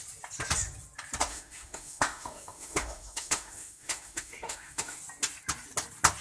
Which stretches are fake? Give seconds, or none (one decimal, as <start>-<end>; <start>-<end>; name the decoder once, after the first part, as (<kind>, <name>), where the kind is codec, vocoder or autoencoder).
1.3-5.0 (autoencoder, DAC-VAE)